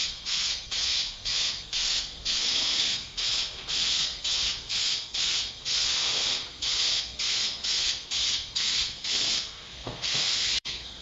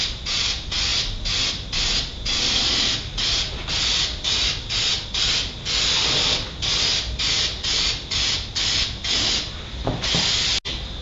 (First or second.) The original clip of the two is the second